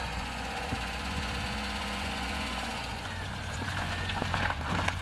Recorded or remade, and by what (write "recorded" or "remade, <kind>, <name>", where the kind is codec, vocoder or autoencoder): remade, vocoder, Vocos